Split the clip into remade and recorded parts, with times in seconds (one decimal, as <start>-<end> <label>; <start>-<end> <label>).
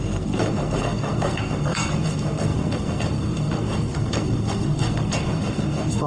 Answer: 0.0-6.1 remade